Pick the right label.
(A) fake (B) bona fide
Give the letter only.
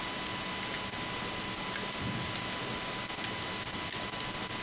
B